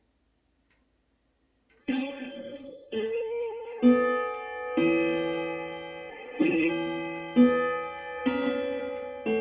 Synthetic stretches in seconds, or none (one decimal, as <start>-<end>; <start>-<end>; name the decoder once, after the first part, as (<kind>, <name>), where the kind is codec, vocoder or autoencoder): 1.8-3.8 (codec, SNAC); 6.1-6.7